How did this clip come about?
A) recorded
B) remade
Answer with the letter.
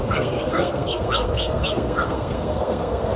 B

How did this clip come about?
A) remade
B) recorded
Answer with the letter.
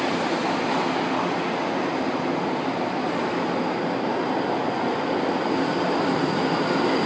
B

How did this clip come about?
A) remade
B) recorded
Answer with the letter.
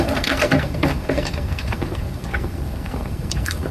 A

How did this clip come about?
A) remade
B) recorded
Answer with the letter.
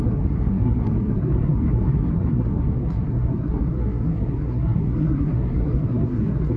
A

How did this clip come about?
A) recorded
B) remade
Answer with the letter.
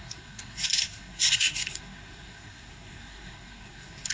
B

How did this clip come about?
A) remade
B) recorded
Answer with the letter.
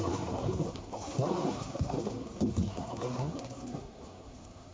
A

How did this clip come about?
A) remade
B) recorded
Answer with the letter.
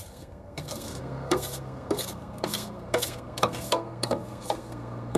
A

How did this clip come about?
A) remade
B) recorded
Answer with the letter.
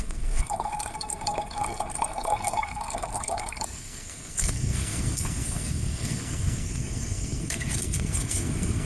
A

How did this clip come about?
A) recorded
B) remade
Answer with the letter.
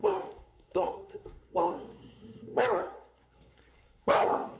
B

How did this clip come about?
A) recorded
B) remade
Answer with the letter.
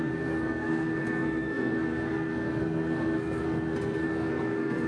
B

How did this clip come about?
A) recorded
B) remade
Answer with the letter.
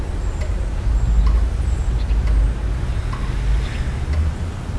A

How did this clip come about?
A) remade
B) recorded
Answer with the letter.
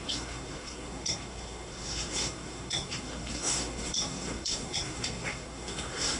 A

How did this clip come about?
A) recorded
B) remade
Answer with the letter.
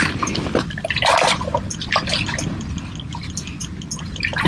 A